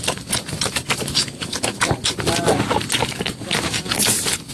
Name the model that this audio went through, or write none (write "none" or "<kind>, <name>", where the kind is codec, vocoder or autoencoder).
none